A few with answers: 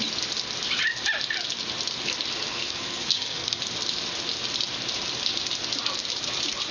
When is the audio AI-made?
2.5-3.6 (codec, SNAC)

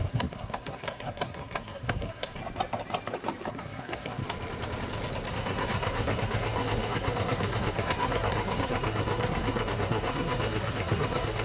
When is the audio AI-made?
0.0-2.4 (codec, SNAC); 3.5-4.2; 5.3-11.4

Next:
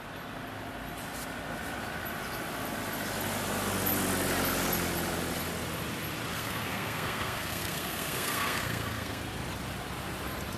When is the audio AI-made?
6.3-9.2 (codec, SNAC)

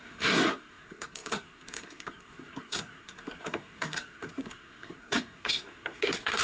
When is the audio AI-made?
0.0-6.4 (codec, SNAC)

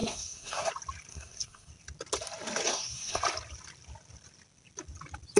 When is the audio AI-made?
0.0-0.7 (codec, SNAC); 1.1-1.7; 2.7-3.2

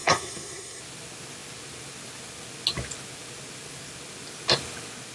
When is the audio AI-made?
0.0-0.8 (codec, SNAC)